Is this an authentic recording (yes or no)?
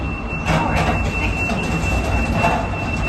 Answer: no